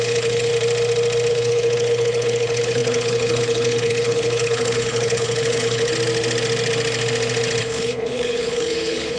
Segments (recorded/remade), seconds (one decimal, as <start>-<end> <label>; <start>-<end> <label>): 0.0-0.5 remade; 0.5-1.3 recorded; 1.3-5.9 remade; 5.9-7.6 recorded; 7.6-9.2 remade